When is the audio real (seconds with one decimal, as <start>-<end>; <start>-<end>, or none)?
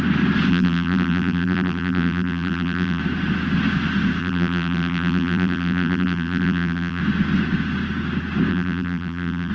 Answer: 0.0-0.5; 3.0-4.2; 7.0-8.5